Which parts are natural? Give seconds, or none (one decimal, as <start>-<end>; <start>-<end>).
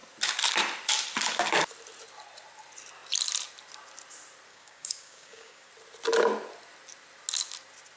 0.0-4.5; 5.7-8.0